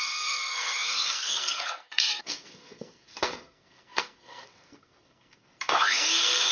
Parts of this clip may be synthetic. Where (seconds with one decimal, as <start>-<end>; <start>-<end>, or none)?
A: 0.0-6.5